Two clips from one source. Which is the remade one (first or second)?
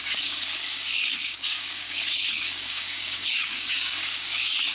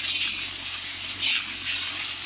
first